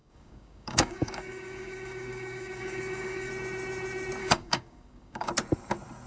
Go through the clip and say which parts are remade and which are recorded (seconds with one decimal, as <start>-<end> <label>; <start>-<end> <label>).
0.0-3.3 remade; 3.3-4.2 recorded; 4.2-5.3 remade; 5.3-6.1 recorded